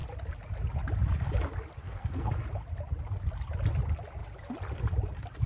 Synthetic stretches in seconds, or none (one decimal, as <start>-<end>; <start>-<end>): 1.8-2.3